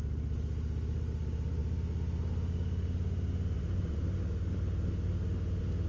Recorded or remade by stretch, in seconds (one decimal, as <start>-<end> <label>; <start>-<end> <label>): 0.0-1.6 recorded; 1.6-4.9 remade; 4.9-5.9 recorded